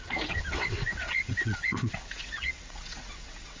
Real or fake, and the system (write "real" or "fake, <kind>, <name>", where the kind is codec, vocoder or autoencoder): fake, vocoder, WaveNeXt